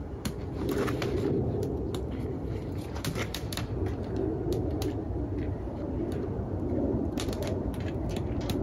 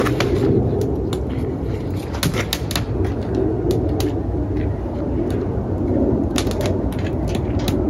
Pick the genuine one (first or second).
second